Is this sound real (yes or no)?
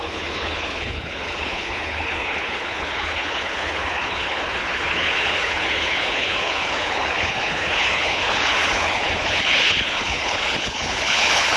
no